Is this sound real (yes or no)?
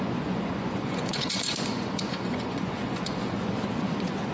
no